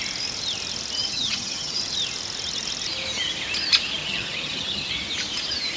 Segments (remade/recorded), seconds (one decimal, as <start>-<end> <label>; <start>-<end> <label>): 0.0-1.0 recorded; 1.0-1.8 remade; 1.8-4.0 recorded; 4.0-4.9 remade; 4.9-5.8 recorded